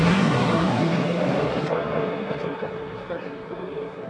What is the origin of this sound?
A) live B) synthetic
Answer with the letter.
B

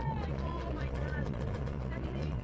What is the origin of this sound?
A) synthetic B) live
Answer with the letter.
A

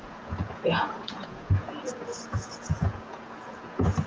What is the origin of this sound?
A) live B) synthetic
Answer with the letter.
B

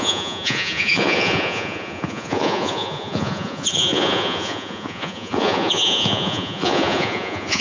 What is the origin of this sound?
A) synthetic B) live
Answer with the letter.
A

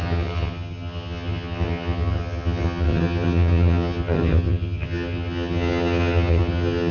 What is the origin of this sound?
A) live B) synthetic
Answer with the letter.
B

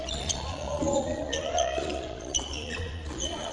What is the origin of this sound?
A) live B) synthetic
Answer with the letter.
B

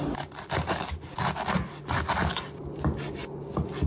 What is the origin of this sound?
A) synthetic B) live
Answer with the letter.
B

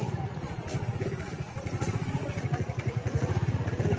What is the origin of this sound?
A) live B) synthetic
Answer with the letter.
B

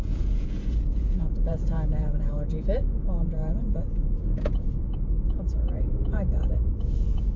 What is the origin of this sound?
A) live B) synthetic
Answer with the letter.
B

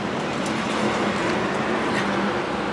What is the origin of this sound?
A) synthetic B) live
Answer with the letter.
B